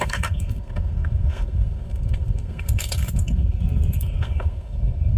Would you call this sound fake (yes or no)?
yes